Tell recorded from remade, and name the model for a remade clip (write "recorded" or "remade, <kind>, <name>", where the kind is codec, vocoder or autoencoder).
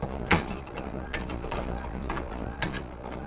remade, vocoder, Vocos